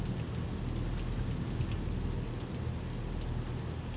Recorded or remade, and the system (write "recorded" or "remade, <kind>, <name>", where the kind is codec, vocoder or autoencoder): recorded